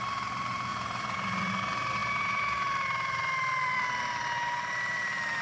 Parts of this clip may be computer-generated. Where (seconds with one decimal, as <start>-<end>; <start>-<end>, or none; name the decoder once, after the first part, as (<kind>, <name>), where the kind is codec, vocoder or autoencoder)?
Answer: 0.0-5.4 (vocoder, BigVGAN v2)